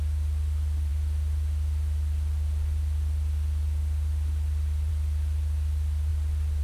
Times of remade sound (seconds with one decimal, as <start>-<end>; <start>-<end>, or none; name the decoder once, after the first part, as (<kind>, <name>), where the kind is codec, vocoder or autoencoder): none